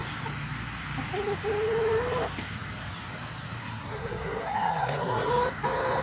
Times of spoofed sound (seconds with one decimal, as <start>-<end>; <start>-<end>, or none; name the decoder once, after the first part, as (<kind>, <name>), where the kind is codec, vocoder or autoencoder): 3.6-5.3 (codec, SNAC)